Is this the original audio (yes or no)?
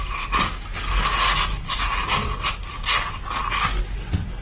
yes